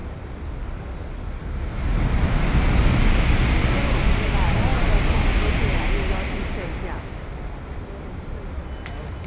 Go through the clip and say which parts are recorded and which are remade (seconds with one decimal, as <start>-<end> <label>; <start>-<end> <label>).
0.0-9.3 recorded